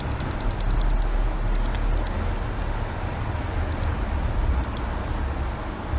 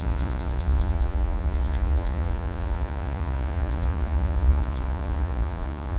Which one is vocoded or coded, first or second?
second